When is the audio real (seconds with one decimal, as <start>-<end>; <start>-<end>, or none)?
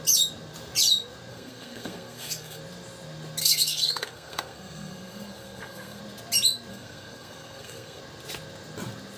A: 0.0-1.3; 2.6-3.4; 6.0-6.7; 8.0-9.2